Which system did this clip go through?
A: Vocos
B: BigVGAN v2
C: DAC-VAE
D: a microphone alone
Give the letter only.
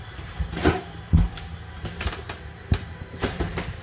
B